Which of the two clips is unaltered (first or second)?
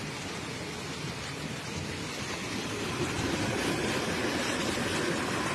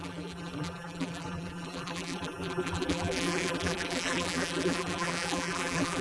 first